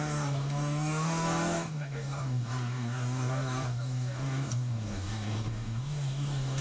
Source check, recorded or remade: remade